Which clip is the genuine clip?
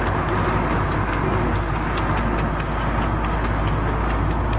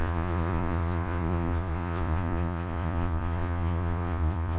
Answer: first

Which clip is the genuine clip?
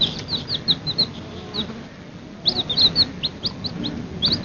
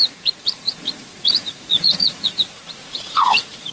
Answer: first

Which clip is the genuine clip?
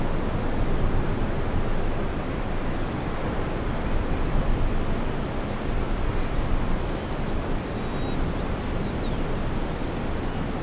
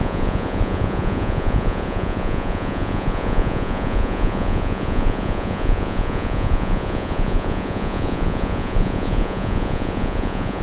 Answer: first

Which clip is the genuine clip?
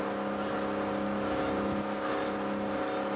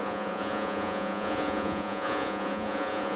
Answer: first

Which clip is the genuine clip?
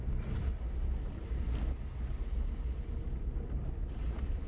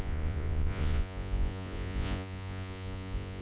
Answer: first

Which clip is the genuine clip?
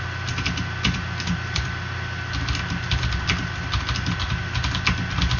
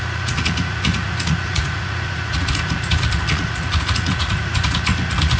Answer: first